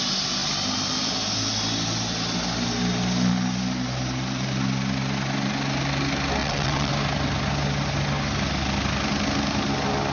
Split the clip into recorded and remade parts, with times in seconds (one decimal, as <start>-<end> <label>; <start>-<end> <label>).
0.0-6.4 recorded; 6.4-6.9 remade; 6.9-10.1 recorded